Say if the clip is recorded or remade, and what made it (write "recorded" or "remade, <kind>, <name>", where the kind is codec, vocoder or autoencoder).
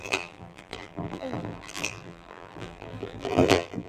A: remade, vocoder, BigVGAN v2